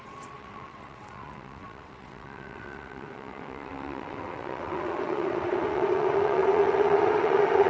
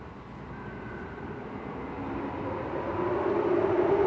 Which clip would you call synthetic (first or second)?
first